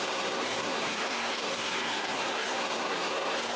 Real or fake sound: fake